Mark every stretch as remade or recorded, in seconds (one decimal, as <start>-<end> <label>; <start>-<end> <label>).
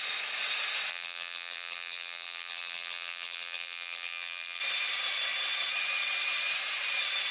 0.0-0.9 recorded; 0.9-4.6 remade; 4.6-7.3 recorded